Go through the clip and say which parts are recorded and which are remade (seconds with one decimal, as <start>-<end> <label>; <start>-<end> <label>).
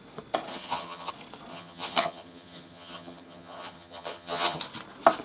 0.0-0.5 recorded; 0.5-1.1 remade; 1.1-1.5 recorded; 1.5-4.6 remade; 4.6-5.2 recorded